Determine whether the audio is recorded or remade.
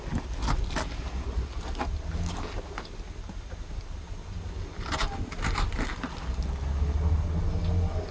recorded